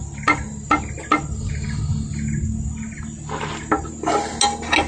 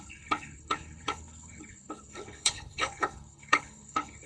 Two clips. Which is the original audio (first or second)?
first